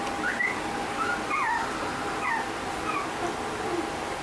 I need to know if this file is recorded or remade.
recorded